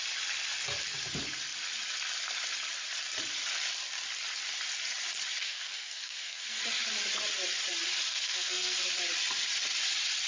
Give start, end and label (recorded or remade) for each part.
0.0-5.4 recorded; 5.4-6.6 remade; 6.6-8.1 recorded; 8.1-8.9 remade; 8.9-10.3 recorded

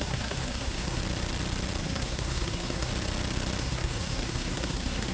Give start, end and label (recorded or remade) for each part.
0.0-1.0 remade; 1.0-1.8 recorded; 1.8-2.9 remade; 2.9-3.6 recorded; 3.6-5.1 remade

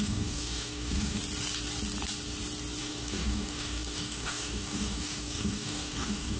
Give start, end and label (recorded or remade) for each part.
0.0-1.2 remade; 1.2-2.8 recorded; 2.8-6.4 remade